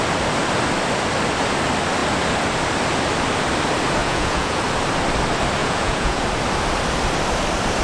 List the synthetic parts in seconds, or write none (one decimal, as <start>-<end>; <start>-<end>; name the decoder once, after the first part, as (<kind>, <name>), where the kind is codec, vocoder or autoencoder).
4.0-4.6 (vocoder, Vocos); 5.6-6.2

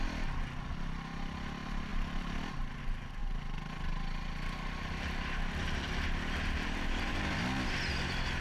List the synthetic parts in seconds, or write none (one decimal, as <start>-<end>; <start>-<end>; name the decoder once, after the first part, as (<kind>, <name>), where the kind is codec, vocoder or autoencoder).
none